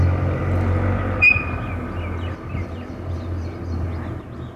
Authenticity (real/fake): real